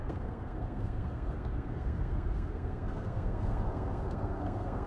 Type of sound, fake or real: fake